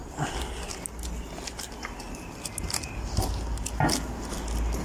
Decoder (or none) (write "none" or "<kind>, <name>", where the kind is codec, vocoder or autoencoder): none